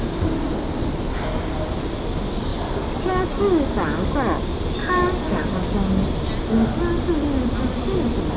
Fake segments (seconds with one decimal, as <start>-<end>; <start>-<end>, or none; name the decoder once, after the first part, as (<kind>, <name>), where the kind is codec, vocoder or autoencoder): none

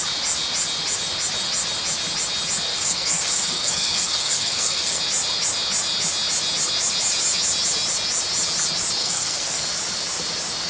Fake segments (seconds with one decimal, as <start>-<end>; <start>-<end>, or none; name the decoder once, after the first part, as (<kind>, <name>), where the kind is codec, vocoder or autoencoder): 2.7-5.0 (codec, SNAC); 9.0-9.7

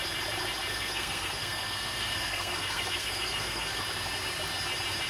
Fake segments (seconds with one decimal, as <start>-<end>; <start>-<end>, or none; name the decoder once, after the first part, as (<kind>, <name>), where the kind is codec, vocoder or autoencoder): 0.7-3.8 (codec, SNAC)

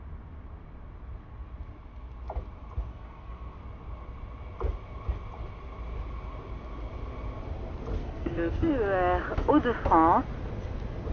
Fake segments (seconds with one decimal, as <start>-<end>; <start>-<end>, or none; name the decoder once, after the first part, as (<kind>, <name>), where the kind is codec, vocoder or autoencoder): 2.9-3.6 (codec, SNAC); 8.0-8.7

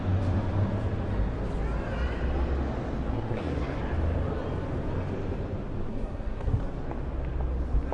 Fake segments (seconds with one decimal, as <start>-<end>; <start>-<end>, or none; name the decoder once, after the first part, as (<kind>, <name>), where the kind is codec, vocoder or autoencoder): 3.1-3.8 (codec, SNAC); 5.9-6.5

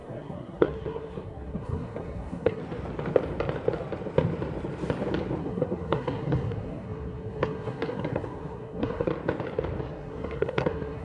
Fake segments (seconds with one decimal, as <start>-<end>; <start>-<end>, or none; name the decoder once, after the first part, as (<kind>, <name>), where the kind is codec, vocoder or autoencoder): 0.0-2.6 (codec, SNAC); 5.4-9.1; 9.8-11.0

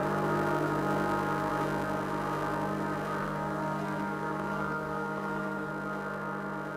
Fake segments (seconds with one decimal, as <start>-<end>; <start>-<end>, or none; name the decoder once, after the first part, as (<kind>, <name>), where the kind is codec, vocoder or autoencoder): 3.2-5.7 (codec, SNAC)

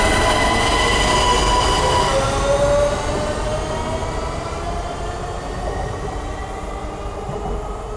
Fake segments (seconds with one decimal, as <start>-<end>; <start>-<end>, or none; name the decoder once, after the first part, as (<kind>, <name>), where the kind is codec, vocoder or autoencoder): none